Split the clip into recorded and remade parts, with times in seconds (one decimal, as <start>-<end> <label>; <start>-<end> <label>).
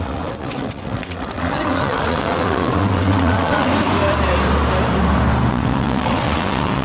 0.0-3.7 remade; 3.7-5.5 recorded; 5.5-6.8 remade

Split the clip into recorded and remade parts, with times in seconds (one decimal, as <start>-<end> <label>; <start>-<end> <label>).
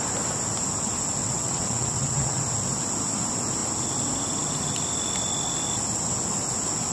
0.0-1.2 recorded; 1.2-2.4 remade; 2.4-6.9 recorded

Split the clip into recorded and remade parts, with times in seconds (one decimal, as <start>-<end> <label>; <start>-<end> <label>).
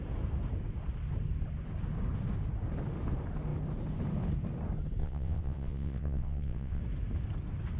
0.0-5.0 recorded; 5.0-6.8 remade; 6.8-7.8 recorded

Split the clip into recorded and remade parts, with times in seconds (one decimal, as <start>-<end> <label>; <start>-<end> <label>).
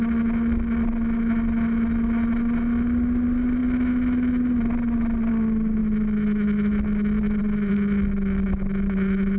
0.0-9.4 recorded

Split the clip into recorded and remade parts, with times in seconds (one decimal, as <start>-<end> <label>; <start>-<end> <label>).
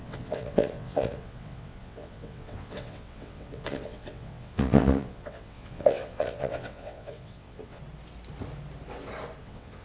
0.0-7.8 remade; 7.8-9.4 recorded; 9.4-9.8 remade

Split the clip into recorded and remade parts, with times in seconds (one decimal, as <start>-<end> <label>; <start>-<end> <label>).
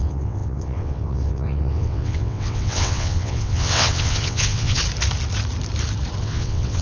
0.0-4.8 remade; 4.8-6.2 recorded; 6.2-6.8 remade